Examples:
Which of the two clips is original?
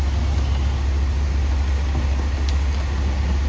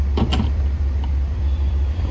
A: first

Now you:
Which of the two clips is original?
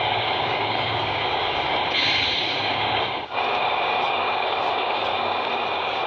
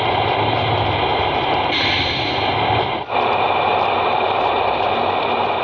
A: second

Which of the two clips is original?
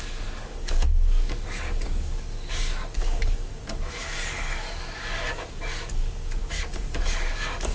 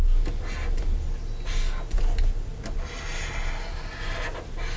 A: second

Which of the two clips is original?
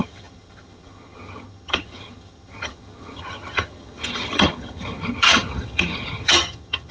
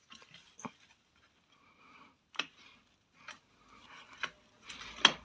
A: second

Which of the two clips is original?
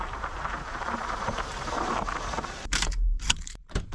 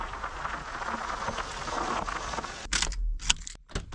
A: second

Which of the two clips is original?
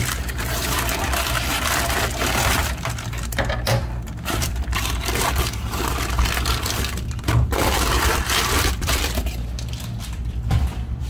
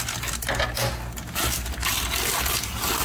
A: second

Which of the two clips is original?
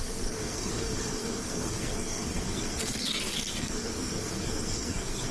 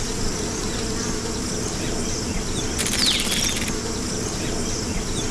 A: second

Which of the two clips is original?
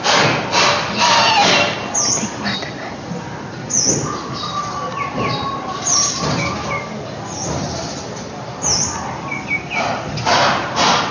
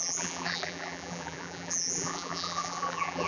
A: first